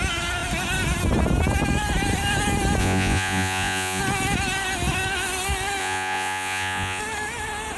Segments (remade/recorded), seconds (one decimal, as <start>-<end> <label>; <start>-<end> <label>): 0.0-2.8 recorded; 2.8-4.0 remade; 4.0-5.8 recorded; 5.8-7.0 remade; 7.0-7.8 recorded